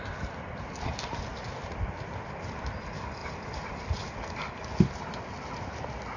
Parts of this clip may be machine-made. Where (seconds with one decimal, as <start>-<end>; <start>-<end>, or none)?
none